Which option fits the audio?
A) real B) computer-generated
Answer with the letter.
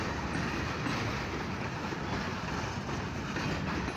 B